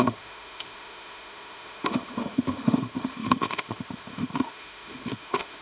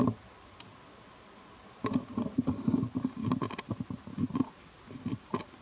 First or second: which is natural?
second